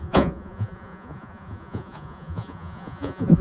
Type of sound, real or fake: fake